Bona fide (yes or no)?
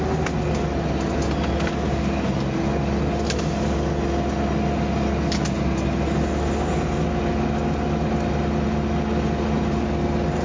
yes